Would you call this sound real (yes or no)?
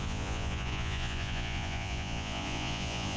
no